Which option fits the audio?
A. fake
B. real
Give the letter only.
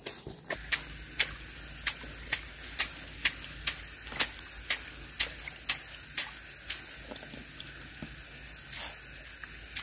B